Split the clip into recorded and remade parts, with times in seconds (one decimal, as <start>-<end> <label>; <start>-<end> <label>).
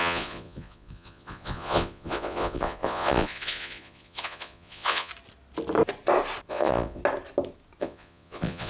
0.0-5.1 remade; 5.1-6.5 recorded; 6.5-7.0 remade; 7.0-7.8 recorded; 7.8-8.7 remade